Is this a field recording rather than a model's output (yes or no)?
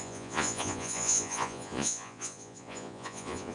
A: no